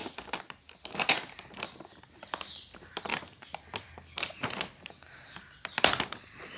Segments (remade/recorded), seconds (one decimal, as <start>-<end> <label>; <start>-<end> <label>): 0.0-1.6 recorded; 1.6-3.1 remade; 3.1-5.4 recorded; 5.4-6.6 remade